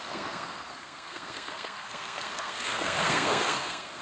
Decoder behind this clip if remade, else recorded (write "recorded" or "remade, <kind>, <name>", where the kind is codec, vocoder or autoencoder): remade, codec, SNAC